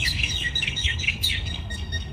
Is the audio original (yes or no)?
no